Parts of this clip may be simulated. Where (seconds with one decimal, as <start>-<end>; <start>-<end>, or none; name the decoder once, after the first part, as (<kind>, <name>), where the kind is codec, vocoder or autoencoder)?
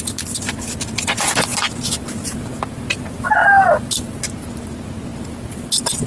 none